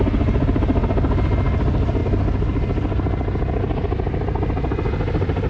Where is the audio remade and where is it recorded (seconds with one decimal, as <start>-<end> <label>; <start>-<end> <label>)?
0.0-5.5 recorded